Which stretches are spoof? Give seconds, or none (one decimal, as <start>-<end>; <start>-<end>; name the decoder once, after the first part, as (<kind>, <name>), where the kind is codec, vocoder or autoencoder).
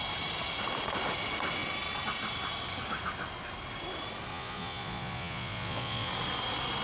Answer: 4.3-6.1 (vocoder, Vocos)